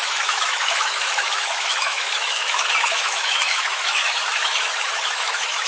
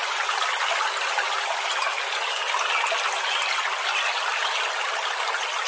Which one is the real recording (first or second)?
second